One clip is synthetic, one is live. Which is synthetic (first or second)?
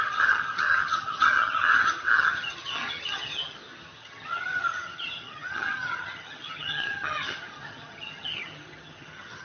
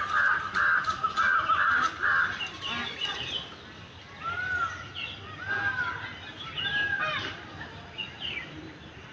first